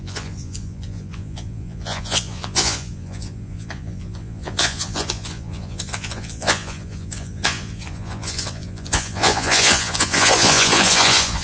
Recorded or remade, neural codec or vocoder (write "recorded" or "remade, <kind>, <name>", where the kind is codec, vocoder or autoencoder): remade, vocoder, Vocos